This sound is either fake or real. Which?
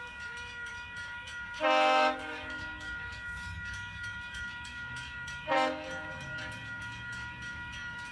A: fake